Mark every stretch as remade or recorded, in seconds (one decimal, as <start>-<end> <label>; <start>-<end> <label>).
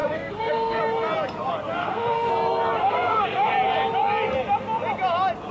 0.0-0.8 remade; 0.8-1.8 recorded; 1.8-2.3 remade; 2.3-2.8 recorded; 2.8-3.5 remade; 3.5-5.5 recorded